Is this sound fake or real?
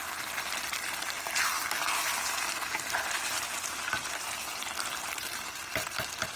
real